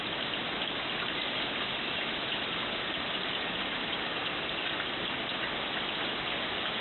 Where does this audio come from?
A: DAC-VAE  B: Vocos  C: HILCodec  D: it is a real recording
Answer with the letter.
D